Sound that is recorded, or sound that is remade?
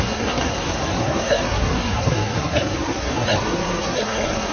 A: remade